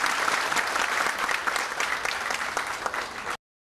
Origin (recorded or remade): recorded